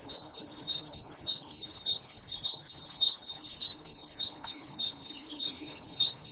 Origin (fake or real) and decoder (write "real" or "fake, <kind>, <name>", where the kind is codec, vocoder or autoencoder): fake, codec, HILCodec